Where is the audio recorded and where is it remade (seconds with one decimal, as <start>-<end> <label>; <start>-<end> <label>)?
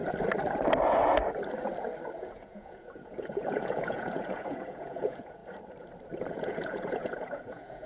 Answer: 0.0-2.2 recorded; 2.2-5.4 remade; 5.4-6.3 recorded; 6.3-7.9 remade